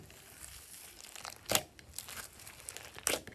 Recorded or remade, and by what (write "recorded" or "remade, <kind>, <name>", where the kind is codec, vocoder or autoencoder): recorded